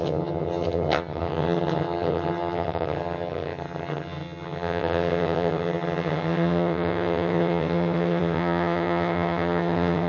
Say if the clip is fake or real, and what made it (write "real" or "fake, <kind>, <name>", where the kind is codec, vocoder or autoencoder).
fake, vocoder, HiFi-GAN